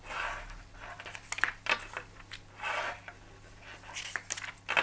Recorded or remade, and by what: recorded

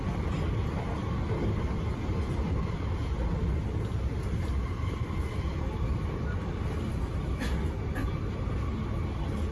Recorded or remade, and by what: recorded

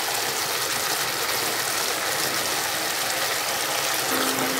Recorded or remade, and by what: recorded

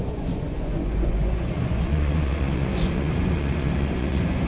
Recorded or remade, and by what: remade, vocoder, Vocos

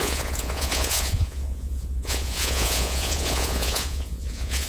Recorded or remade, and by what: remade, vocoder, Vocos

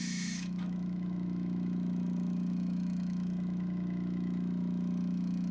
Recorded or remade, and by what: remade, autoencoder, DAC-VAE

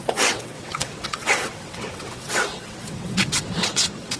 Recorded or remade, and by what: remade, vocoder, WaveNeXt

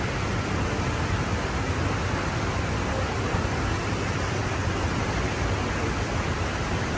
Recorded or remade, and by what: recorded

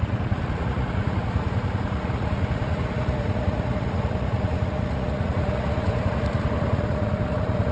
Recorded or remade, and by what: remade, vocoder, Vocos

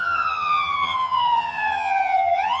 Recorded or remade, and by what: remade, vocoder, HiFi-GAN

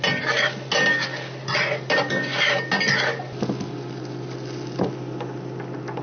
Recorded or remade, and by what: recorded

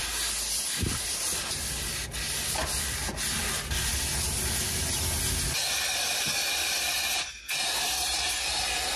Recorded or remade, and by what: recorded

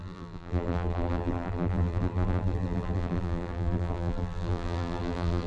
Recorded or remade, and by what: remade, vocoder, BigVGAN v2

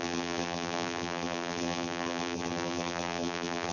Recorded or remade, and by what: remade, vocoder, BigVGAN v2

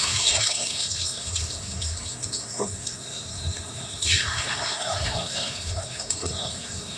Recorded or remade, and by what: remade, codec, SNAC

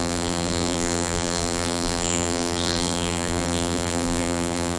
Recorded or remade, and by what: remade, vocoder, BigVGAN v2